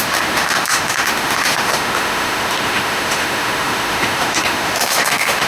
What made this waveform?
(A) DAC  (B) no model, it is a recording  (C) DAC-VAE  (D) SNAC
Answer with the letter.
C